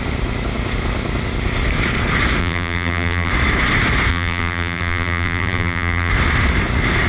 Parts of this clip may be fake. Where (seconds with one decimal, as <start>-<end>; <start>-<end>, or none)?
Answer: 2.4-3.3; 4.1-6.1